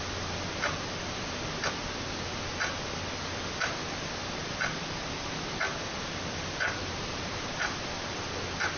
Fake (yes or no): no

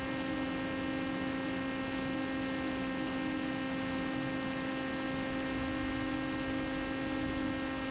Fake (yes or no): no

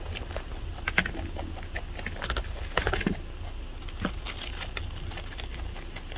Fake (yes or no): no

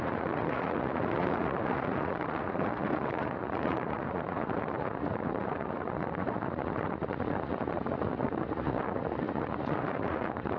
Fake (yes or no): yes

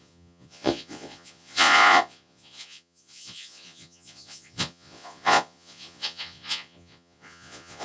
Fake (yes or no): yes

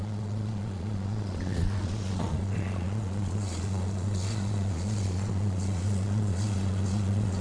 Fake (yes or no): yes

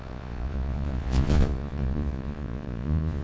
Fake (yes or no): yes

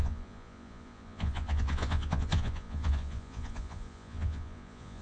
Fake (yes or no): yes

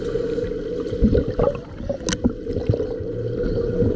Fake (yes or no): no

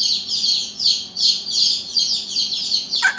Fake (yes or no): yes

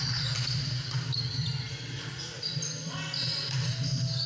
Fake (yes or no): no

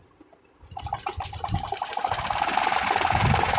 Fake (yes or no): no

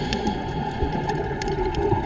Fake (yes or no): yes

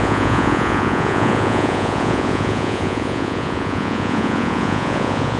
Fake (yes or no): yes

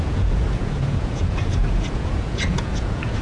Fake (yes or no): yes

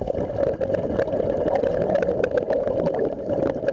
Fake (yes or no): no